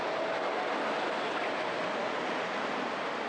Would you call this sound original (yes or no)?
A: yes